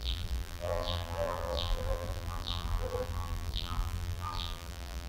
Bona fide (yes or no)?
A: no